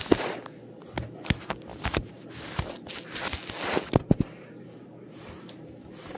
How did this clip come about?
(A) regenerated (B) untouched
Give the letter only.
B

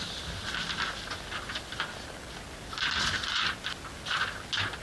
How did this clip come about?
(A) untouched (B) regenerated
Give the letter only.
A